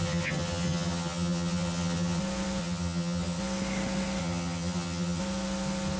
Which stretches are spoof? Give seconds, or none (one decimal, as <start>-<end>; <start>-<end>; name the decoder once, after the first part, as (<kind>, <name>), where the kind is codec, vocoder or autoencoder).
0.0-2.2 (vocoder, HiFi-GAN); 2.6-3.4; 4.2-5.2